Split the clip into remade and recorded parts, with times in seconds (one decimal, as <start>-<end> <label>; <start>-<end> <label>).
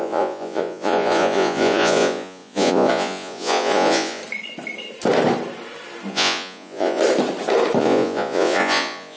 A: 0.0-4.2 remade; 4.2-6.1 recorded; 6.1-7.0 remade; 7.0-7.8 recorded; 7.8-9.2 remade